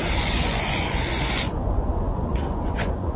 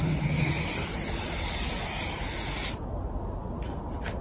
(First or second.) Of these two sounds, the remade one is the first